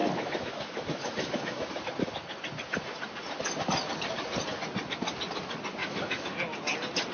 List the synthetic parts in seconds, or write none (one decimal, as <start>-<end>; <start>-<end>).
0.0-1.8; 5.8-6.4